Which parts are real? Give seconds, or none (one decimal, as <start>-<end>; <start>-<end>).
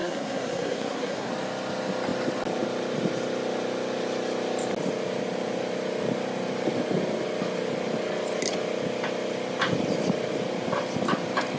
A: 1.3-11.6